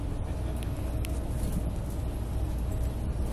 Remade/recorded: recorded